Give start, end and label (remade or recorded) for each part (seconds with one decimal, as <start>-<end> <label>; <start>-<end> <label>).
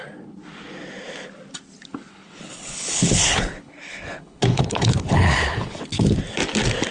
0.0-2.1 recorded; 2.1-6.2 remade; 6.2-6.9 recorded